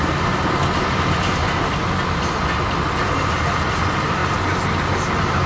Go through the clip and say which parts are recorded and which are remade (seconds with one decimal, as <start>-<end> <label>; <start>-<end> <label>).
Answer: 0.0-5.5 recorded